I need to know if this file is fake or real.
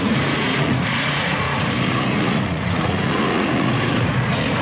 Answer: fake